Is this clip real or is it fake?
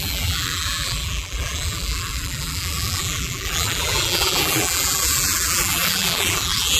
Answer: fake